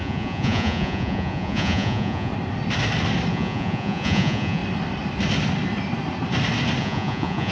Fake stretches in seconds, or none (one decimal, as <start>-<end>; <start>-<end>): 0.0-2.3; 3.3-4.6; 6.8-7.5

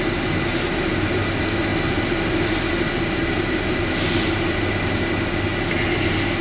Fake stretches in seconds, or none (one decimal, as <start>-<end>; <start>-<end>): none

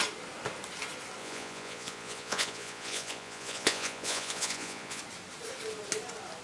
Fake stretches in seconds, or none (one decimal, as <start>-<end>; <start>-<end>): 1.2-5.0

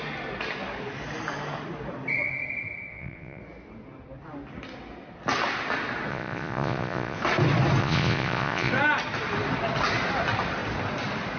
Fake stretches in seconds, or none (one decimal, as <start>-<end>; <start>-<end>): 2.9-3.4; 6.1-7.2; 7.8-8.7